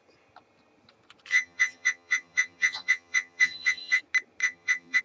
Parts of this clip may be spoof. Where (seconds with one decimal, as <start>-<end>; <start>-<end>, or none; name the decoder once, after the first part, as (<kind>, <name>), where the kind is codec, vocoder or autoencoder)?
1.3-4.0 (vocoder, HiFi-GAN); 4.4-5.0